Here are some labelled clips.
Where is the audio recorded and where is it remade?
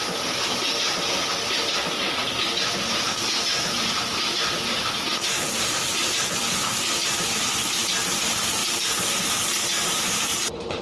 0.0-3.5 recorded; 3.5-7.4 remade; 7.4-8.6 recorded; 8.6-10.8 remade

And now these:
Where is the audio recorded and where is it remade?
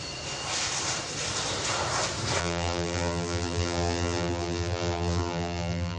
0.0-2.4 recorded; 2.4-6.0 remade